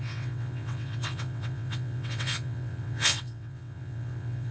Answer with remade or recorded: remade